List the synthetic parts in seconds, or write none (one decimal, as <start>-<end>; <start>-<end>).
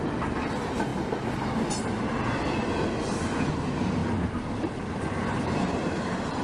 0.9-1.8; 4.0-4.7